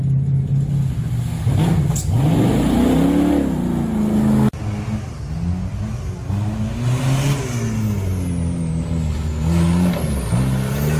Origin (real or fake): real